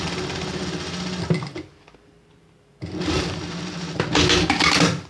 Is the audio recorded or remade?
recorded